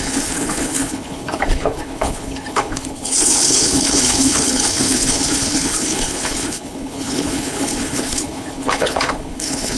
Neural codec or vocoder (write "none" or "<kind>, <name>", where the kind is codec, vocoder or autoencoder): codec, HILCodec